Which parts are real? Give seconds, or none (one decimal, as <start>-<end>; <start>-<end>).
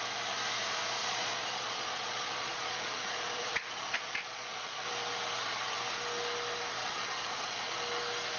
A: 0.0-1.0; 4.9-6.8; 7.8-8.4